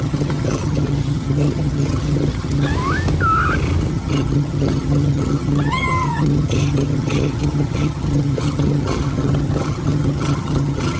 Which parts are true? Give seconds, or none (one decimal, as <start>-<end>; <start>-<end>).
2.7-3.9